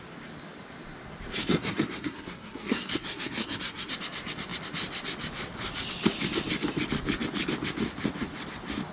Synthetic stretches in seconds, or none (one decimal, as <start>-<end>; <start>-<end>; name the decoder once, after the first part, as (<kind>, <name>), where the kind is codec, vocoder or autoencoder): 1.4-3.9 (codec, SNAC)